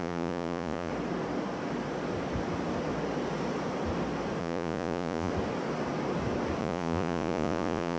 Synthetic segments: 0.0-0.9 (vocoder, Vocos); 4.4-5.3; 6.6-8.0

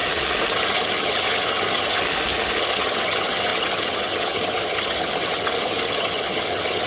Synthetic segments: 0.5-2.0 (vocoder, HiFi-GAN); 2.6-6.9

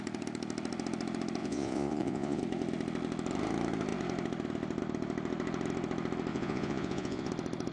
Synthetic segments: 1.4-2.4 (vocoder, Vocos); 6.3-7.3

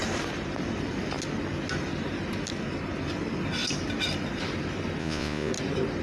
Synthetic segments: 5.0-5.5 (vocoder, Vocos)

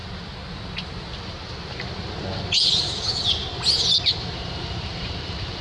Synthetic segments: 4.2-5.6 (vocoder, BigVGAN v2)

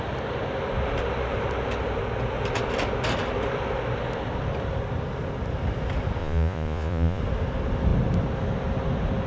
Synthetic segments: 6.2-7.2 (vocoder, Vocos)